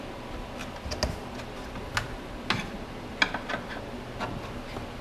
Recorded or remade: recorded